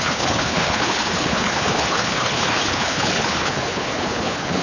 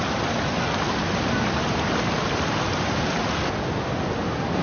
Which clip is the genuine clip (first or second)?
second